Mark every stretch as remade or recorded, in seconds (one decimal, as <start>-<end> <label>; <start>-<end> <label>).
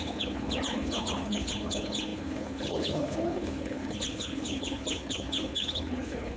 0.0-6.4 remade